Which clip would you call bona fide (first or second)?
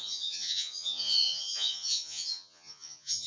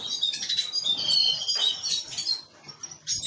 second